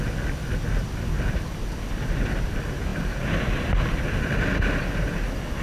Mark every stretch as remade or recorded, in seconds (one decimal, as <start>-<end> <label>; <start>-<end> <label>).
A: 0.0-5.6 recorded